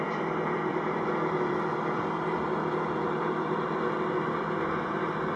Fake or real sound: fake